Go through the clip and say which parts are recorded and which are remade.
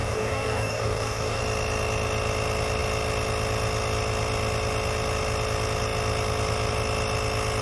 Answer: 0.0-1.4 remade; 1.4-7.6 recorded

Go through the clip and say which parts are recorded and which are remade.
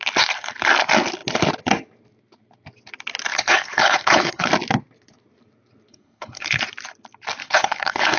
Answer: 0.0-3.3 recorded; 3.3-4.5 remade; 4.5-5.9 recorded; 5.9-6.6 remade; 6.6-7.4 recorded; 7.4-8.2 remade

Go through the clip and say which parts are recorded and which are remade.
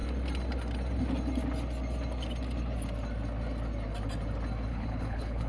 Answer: 0.0-4.7 recorded; 4.7-5.5 remade